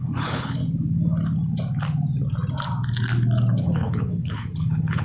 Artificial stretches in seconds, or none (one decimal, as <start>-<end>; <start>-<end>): 0.0-0.6; 3.6-5.0